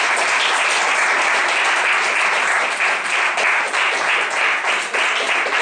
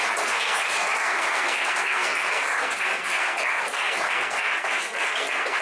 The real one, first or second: first